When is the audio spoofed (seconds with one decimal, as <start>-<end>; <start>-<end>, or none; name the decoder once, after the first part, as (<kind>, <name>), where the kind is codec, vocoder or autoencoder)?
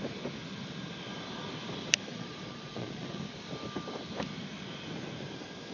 2.1-3.2 (vocoder, Vocos)